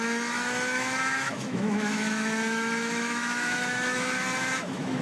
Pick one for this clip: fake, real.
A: fake